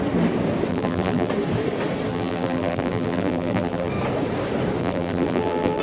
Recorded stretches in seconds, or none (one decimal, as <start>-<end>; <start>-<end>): 0.0-0.7; 1.3-2.1; 3.9-4.8